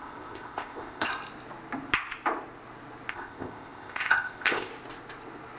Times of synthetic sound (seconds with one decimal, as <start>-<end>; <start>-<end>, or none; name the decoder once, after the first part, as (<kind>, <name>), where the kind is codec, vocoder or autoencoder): 0.0-1.1 (codec, ZipCodec); 3.1-4.7